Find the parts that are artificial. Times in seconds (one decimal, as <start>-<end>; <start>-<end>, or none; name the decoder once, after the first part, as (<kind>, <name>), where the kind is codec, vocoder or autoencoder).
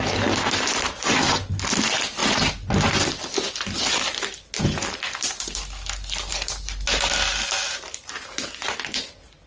none